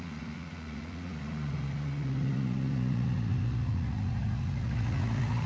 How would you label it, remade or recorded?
remade